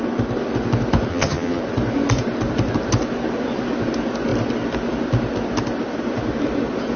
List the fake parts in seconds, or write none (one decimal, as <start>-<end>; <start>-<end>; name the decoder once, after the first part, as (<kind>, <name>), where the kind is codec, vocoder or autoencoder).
1.1-1.6 (vocoder, HiFi-GAN)

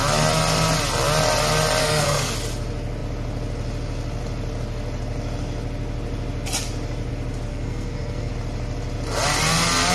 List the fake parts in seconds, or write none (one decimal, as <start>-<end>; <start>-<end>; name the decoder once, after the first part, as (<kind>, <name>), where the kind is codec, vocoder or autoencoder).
1.8-2.3 (codec, SNAC); 7.5-8.3

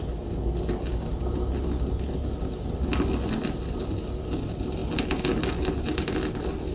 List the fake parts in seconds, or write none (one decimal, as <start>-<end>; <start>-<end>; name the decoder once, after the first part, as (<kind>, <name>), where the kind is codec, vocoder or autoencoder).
none

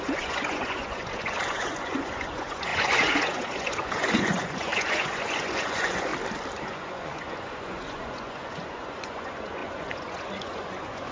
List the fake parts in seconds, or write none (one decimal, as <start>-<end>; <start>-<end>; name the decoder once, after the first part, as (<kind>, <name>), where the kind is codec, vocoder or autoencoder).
0.0-6.1 (vocoder, Vocos); 6.6-11.1